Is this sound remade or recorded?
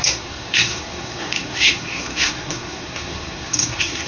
remade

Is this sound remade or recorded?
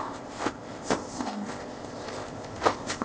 remade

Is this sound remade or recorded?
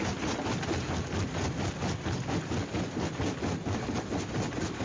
recorded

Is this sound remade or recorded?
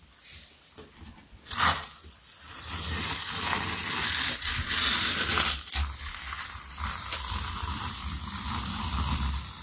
recorded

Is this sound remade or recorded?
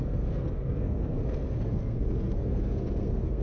remade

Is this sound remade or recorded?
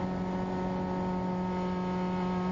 recorded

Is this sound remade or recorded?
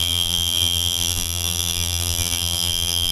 remade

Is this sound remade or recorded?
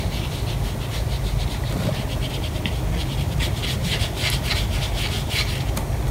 recorded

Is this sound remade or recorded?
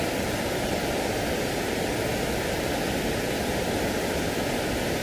remade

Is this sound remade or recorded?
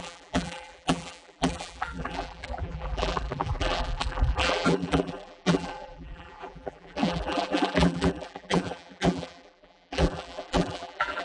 remade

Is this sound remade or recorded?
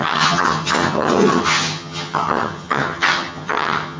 remade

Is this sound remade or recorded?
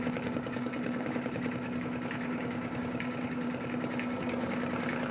remade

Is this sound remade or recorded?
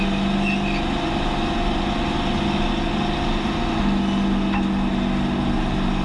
recorded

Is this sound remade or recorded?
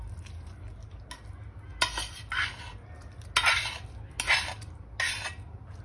recorded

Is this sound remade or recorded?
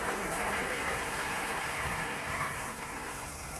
remade